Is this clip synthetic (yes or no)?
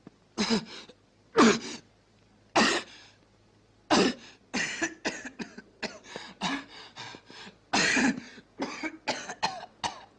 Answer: no